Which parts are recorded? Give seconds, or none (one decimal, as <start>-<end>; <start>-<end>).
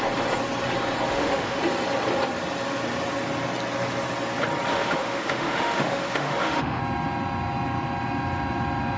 0.0-1.1; 1.6-4.7; 6.8-9.0